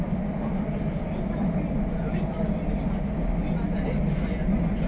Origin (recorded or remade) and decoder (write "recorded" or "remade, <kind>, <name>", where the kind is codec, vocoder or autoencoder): recorded